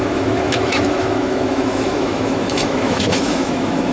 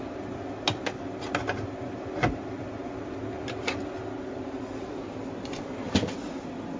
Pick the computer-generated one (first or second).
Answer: first